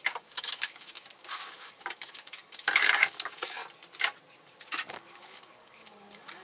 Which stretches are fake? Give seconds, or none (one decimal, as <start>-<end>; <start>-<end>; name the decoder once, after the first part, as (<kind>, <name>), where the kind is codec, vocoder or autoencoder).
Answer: 0.0-3.6 (codec, DAC); 4.9-6.4